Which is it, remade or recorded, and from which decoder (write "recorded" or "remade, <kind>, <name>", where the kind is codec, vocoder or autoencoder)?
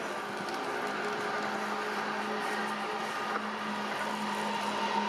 recorded